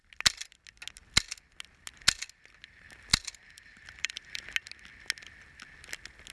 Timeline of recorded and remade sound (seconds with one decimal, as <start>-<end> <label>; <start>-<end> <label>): 0.0-3.1 recorded; 3.1-4.4 remade; 4.4-6.3 recorded